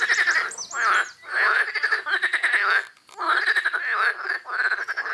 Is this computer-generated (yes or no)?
no